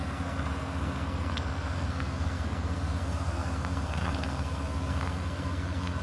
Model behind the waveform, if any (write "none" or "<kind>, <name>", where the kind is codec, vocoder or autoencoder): codec, SNAC